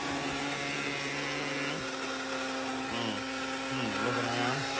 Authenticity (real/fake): real